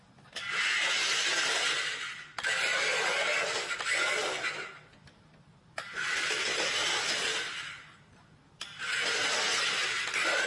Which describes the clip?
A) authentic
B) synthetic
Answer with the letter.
A